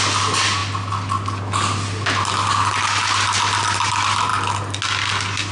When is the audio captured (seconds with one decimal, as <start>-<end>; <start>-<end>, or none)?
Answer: 0.0-5.5